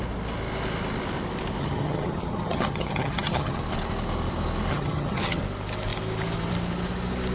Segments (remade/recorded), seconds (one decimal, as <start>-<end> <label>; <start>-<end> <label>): 0.0-1.6 recorded; 1.6-3.6 remade; 3.6-4.7 recorded; 4.7-5.4 remade; 5.4-7.3 recorded

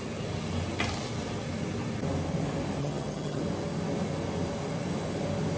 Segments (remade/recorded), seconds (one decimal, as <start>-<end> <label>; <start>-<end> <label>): 0.0-2.8 recorded; 2.8-3.4 remade; 3.4-5.6 recorded

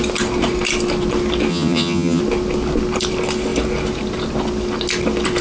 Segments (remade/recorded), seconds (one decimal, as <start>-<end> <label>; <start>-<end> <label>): 0.0-1.5 recorded; 1.5-2.2 remade; 2.2-5.4 recorded

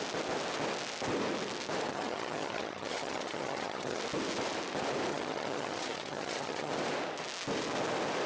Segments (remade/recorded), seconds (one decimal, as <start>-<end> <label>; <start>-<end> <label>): 0.0-1.9 recorded; 1.9-4.0 remade; 4.0-5.1 recorded; 5.1-6.7 remade; 6.7-8.3 recorded

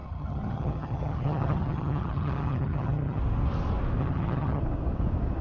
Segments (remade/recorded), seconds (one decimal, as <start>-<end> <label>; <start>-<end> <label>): 0.0-3.2 remade; 3.2-4.0 recorded; 4.0-4.6 remade; 4.6-5.4 recorded

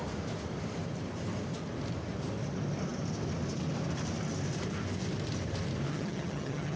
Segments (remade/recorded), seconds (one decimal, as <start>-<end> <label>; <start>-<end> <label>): 0.0-5.9 recorded; 5.9-6.8 remade

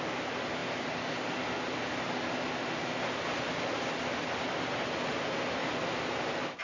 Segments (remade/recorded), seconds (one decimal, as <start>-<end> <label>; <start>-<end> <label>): 0.0-6.6 recorded